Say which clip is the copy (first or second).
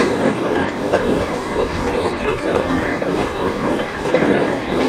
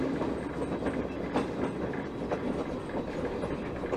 first